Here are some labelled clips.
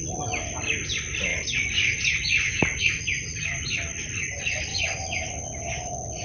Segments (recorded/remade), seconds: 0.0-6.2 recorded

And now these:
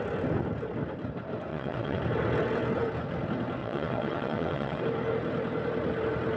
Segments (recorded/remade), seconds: 0.0-1.5 recorded; 1.5-2.0 remade; 2.0-3.6 recorded; 3.6-4.8 remade; 4.8-6.4 recorded

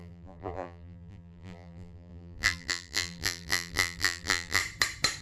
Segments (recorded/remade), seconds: 0.0-4.6 remade; 4.6-5.2 recorded

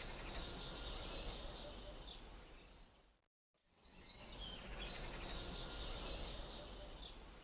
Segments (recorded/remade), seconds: 0.0-3.6 recorded; 3.6-4.2 remade; 4.2-7.4 recorded